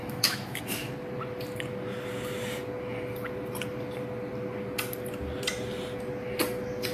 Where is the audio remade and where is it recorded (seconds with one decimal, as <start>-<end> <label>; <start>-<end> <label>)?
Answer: 0.0-0.6 remade; 0.6-6.9 recorded